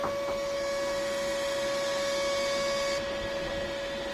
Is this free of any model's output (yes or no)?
yes